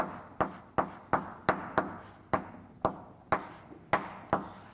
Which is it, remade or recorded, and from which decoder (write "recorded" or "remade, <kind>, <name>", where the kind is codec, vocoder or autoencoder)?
recorded